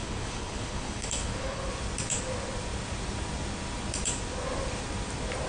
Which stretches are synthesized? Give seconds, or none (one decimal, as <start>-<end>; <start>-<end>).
0.0-1.7